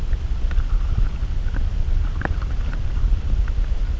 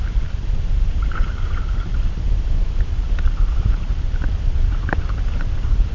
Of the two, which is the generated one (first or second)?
second